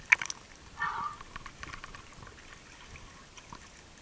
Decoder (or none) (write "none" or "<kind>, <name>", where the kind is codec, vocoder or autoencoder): none